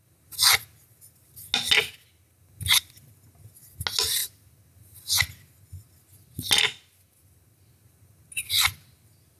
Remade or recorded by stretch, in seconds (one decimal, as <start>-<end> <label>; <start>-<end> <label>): 0.0-9.4 recorded